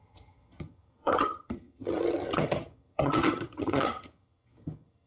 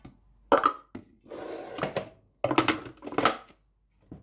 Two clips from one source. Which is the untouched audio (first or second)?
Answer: second